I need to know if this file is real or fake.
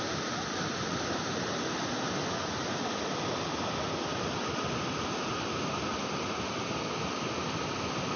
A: real